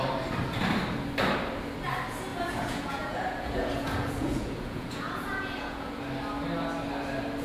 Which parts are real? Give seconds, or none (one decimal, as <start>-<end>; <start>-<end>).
0.0-2.3; 6.0-7.4